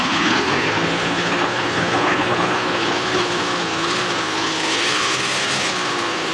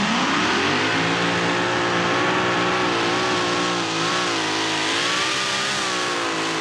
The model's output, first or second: first